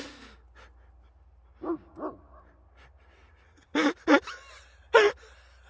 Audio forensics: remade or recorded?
recorded